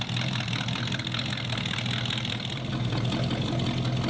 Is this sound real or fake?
real